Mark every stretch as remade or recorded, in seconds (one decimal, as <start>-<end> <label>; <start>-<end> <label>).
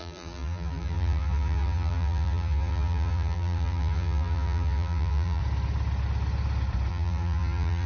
0.0-5.4 remade; 5.4-6.9 recorded; 6.9-7.9 remade